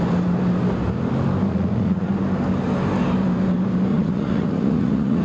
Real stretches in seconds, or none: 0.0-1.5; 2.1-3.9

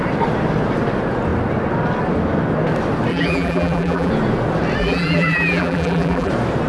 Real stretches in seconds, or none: 0.0-3.1; 4.1-4.8; 6.3-6.7

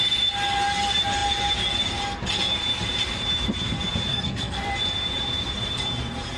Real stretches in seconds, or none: 0.0-4.1; 4.7-6.4

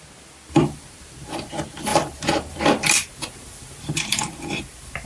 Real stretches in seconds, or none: 0.0-1.9

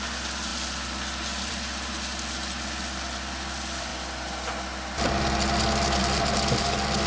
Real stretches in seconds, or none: 0.0-7.1